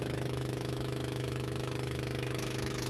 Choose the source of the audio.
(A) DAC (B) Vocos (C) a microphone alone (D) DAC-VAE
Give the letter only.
D